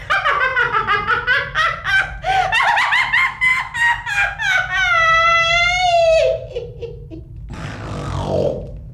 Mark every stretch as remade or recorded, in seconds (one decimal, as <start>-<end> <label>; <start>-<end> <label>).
0.0-0.5 remade; 0.5-1.1 recorded; 1.1-3.5 remade; 3.5-7.2 recorded; 7.2-8.9 remade